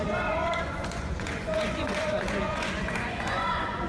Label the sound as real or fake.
fake